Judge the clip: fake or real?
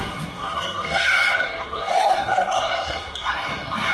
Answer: fake